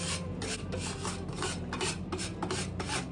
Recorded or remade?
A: recorded